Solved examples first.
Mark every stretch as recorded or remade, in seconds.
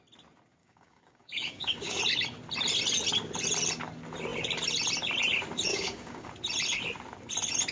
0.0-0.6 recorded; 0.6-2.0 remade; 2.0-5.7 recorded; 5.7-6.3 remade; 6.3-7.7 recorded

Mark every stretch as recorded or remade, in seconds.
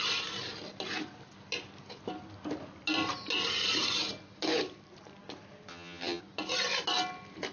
0.0-5.7 recorded; 5.7-6.2 remade; 6.2-7.5 recorded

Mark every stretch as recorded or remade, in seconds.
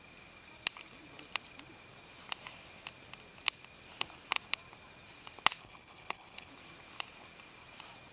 0.0-5.6 recorded; 5.6-6.5 remade; 6.5-8.1 recorded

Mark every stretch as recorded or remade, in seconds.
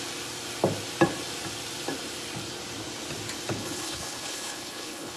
0.0-3.5 recorded; 3.5-5.2 remade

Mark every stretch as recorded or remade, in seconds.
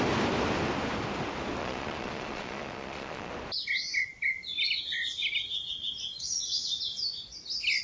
0.0-1.6 recorded; 1.6-3.3 remade; 3.3-7.8 recorded